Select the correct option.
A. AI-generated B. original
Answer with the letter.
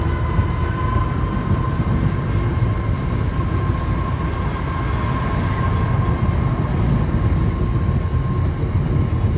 B